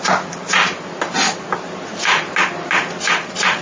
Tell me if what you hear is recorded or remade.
recorded